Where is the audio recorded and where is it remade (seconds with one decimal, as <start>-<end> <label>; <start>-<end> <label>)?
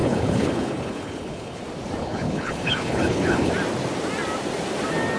0.0-1.6 remade; 1.6-2.0 recorded; 2.0-3.5 remade; 3.5-5.2 recorded